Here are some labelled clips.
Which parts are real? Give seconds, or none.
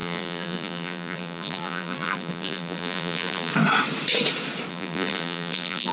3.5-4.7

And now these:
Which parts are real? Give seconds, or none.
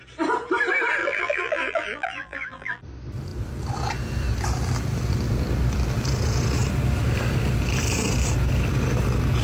0.0-1.0; 2.8-9.4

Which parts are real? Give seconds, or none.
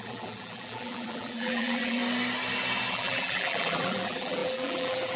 2.0-2.9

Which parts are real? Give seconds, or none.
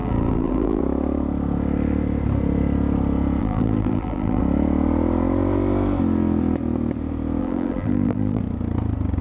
0.8-3.4; 4.4-7.4; 8.4-9.2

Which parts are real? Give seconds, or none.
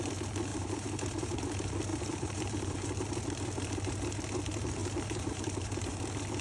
0.0-0.5; 1.4-1.9; 3.1-4.8; 6.0-6.4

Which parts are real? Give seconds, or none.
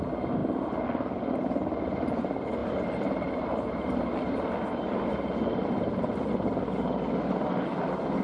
0.0-2.6; 6.3-8.2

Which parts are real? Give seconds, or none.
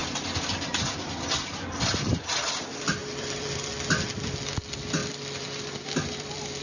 1.3-3.0; 3.7-5.0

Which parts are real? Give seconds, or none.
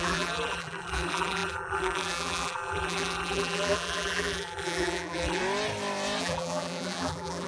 5.4-6.2